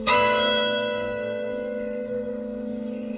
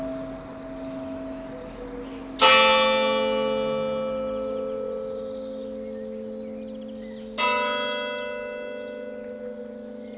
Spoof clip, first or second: first